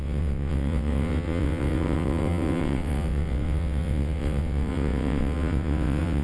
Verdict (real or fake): fake